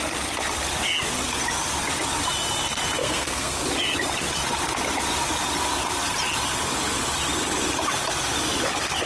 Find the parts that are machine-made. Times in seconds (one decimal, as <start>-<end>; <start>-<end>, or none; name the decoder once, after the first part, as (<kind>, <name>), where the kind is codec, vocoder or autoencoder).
3.0-3.6 (codec, SNAC)